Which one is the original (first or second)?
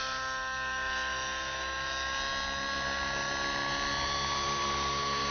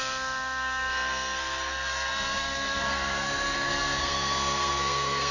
first